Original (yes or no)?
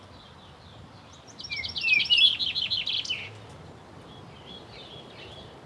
yes